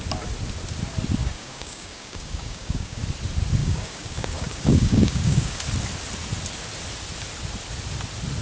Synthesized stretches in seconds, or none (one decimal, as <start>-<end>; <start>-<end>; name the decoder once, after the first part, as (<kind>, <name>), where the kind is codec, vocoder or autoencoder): 1.2-3.0 (codec, DAC); 3.6-5.5

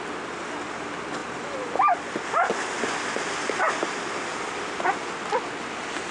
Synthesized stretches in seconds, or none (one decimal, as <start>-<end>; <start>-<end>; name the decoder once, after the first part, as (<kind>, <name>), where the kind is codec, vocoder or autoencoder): none

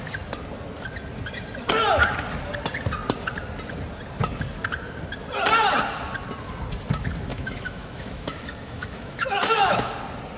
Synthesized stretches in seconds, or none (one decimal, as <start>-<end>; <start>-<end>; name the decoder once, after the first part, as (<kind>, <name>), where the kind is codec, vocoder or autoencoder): 7.3-9.9 (autoencoder, DAC-VAE)

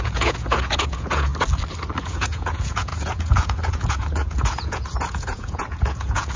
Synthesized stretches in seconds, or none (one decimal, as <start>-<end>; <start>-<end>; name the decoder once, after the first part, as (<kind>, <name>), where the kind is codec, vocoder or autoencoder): 0.0-1.3 (vocoder, Vocos); 2.0-6.4